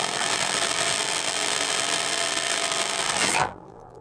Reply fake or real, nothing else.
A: fake